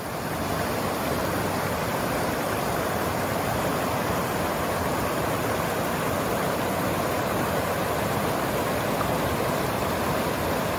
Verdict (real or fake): fake